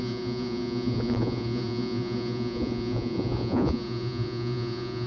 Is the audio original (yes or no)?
no